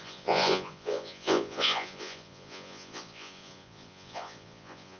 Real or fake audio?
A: fake